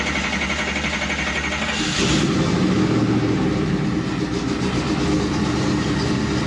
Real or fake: real